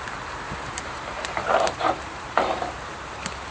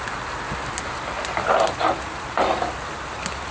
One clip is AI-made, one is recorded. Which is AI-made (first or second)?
first